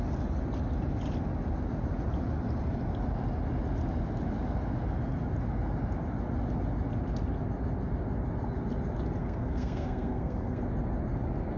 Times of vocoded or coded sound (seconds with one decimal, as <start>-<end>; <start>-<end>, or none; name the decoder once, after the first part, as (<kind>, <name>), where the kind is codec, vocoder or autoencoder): 9.2-10.6 (codec, SNAC)